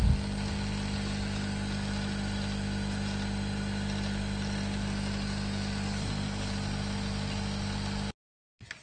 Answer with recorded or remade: recorded